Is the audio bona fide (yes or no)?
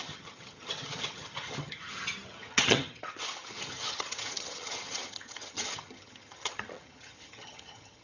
no